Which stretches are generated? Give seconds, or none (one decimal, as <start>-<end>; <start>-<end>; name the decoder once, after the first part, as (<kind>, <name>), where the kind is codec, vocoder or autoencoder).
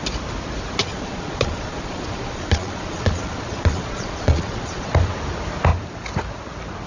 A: 0.8-4.9 (vocoder, Vocos)